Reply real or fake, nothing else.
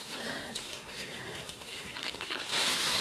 fake